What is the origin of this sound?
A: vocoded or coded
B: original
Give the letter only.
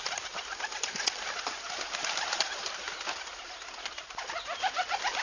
B